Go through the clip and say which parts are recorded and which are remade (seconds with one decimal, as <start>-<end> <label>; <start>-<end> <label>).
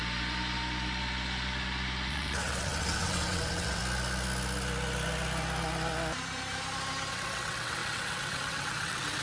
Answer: 0.0-2.1 recorded; 2.1-3.8 remade; 3.8-7.1 recorded; 7.1-9.2 remade